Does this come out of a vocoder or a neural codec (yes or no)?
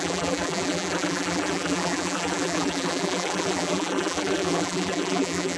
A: yes